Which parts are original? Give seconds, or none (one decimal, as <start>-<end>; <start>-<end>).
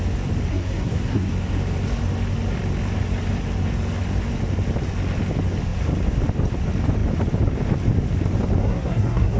0.0-0.5; 1.3-8.6